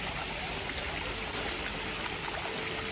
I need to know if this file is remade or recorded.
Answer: recorded